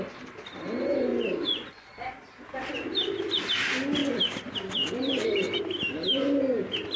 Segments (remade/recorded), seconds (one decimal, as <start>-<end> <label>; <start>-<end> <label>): 0.0-1.1 recorded; 1.1-1.9 remade; 1.9-7.0 recorded